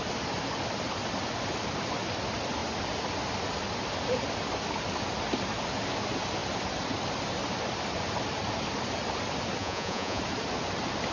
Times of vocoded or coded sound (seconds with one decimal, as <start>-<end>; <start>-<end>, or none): 9.6-10.2